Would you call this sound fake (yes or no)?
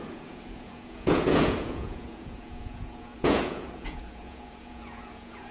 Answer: yes